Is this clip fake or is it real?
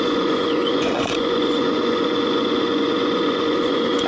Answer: fake